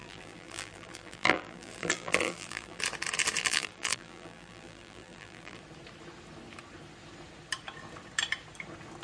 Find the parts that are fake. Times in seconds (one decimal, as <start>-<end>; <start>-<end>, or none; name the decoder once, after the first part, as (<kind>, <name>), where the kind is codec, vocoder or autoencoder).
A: 0.0-2.8 (vocoder, BigVGAN v2); 3.4-5.6